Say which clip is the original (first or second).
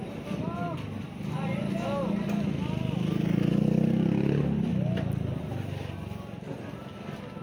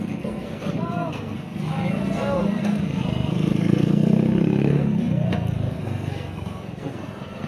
first